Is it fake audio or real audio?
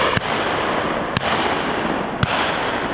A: real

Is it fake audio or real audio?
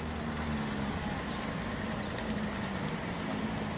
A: real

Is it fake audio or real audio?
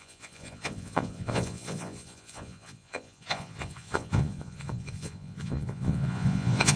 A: fake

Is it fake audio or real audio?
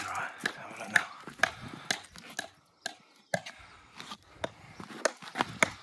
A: real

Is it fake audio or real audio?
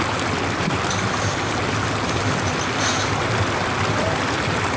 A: real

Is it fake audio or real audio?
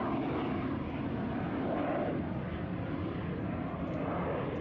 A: real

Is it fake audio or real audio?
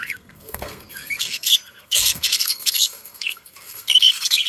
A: fake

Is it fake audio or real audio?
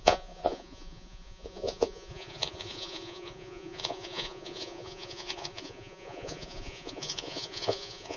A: fake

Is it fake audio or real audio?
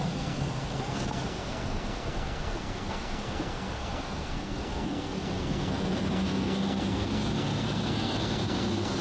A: fake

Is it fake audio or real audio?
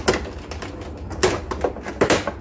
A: real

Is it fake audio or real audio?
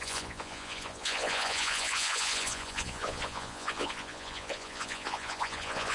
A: fake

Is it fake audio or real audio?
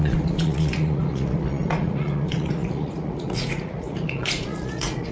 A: fake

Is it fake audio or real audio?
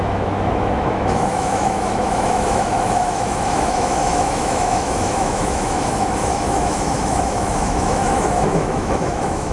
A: fake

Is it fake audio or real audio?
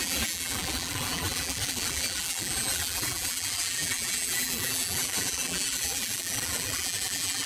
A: fake